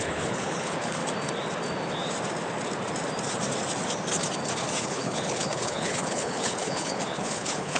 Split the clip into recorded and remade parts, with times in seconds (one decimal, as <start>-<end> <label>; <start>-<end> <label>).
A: 0.0-1.0 remade; 1.0-4.8 recorded; 4.8-7.8 remade

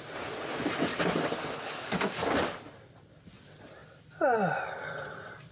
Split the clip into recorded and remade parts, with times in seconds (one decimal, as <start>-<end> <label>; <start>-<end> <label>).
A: 0.0-0.9 remade; 0.9-2.5 recorded; 2.5-3.8 remade; 3.8-4.9 recorded; 4.9-5.5 remade

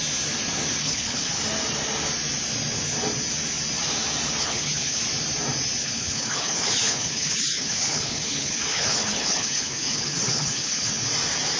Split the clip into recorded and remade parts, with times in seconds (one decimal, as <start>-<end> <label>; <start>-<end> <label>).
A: 0.0-0.8 recorded; 0.8-1.3 remade; 1.3-4.4 recorded; 4.4-5.0 remade; 5.0-5.8 recorded; 5.8-10.9 remade; 10.9-11.6 recorded